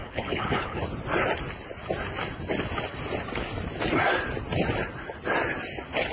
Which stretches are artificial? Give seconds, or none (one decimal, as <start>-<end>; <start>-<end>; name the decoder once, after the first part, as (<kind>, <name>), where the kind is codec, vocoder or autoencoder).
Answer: 0.0-0.8 (codec, HILCodec)